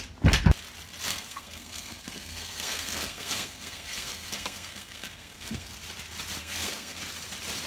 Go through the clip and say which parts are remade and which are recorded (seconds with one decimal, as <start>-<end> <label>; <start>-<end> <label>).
0.0-1.1 recorded; 1.1-5.7 remade; 5.7-6.4 recorded; 6.4-7.0 remade; 7.0-7.7 recorded